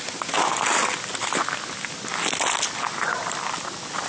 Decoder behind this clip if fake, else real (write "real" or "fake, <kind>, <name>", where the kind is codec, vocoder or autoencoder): real